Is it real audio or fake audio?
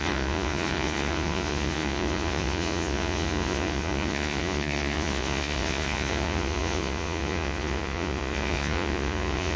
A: fake